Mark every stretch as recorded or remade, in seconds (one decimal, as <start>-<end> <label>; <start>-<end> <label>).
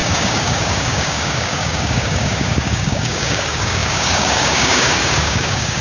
0.0-5.8 remade